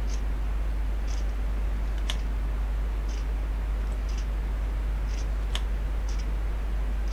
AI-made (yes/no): no